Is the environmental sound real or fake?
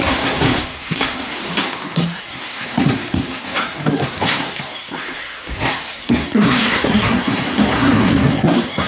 fake